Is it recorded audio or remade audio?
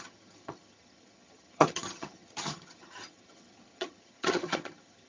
remade